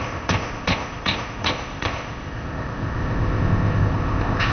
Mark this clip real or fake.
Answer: fake